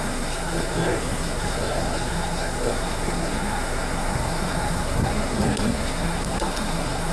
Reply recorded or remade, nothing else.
remade